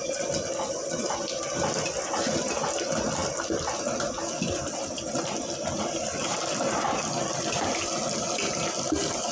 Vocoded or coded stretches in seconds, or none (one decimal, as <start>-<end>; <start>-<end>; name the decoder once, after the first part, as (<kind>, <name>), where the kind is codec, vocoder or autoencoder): none